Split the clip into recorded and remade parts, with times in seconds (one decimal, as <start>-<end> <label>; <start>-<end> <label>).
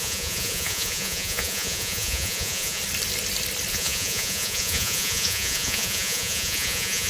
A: 0.0-2.8 remade; 2.8-3.7 recorded; 3.7-7.1 remade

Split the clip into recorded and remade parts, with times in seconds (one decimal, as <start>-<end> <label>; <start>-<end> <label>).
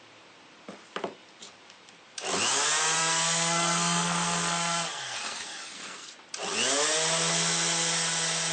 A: 0.0-3.0 recorded; 3.0-6.1 remade; 6.1-8.5 recorded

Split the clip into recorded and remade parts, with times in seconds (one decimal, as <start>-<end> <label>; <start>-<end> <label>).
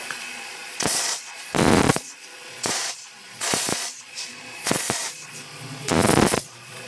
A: 0.0-6.9 remade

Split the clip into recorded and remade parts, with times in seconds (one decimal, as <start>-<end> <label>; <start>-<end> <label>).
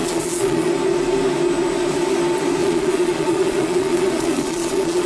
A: 0.0-0.7 remade; 0.7-2.6 recorded; 2.6-5.1 remade